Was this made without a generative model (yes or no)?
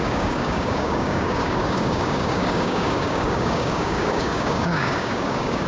no